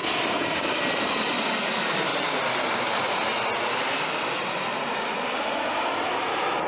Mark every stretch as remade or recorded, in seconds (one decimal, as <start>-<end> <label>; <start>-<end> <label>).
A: 0.0-1.1 remade; 1.1-2.1 recorded; 2.1-6.1 remade; 6.1-6.7 recorded